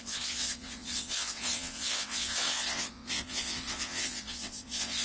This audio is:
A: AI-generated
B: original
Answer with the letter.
A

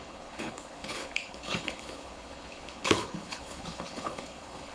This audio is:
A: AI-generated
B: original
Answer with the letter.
A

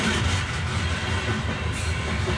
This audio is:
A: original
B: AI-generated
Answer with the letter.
B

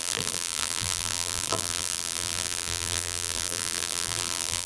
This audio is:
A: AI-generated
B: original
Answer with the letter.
A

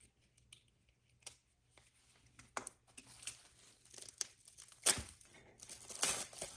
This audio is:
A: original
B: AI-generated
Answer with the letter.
A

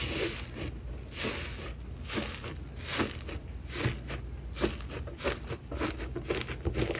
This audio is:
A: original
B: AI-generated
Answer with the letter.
A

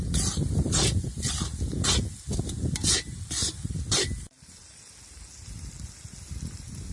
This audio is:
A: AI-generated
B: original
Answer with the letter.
B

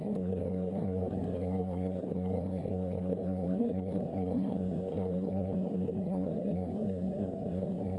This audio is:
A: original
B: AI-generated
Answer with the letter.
B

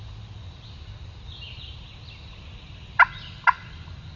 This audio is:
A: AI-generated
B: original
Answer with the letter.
B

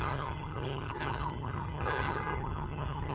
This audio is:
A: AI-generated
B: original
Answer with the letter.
A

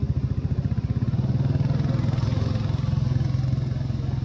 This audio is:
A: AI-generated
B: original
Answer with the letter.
B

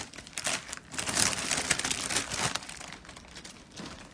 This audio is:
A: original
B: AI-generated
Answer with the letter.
B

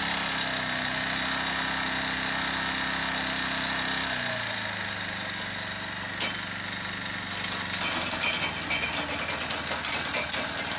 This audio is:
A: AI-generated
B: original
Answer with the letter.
B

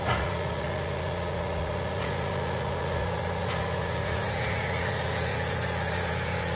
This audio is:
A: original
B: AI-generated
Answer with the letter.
B